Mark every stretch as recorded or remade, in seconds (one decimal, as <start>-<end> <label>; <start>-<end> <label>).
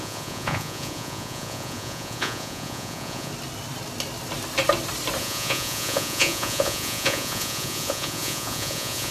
0.0-3.3 remade; 3.3-5.2 recorded; 5.2-9.1 remade